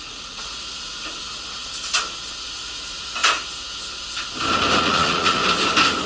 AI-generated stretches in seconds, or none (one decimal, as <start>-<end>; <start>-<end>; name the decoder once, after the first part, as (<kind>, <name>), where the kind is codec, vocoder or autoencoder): 0.0-1.2 (vocoder, Vocos); 2.6-3.2; 4.8-5.4